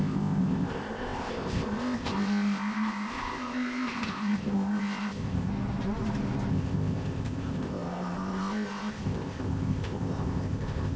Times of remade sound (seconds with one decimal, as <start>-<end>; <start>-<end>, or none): 0.0-5.5; 6.5-11.0